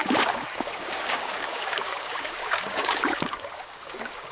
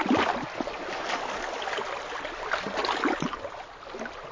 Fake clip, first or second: first